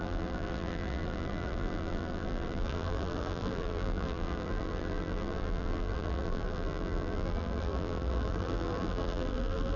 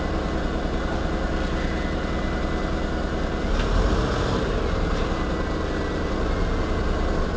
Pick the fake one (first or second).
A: first